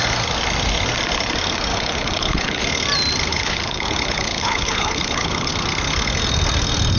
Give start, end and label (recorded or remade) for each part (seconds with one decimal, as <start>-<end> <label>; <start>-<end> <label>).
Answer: 0.0-1.7 recorded; 1.7-2.6 remade; 2.6-3.3 recorded; 3.3-5.5 remade; 5.5-7.0 recorded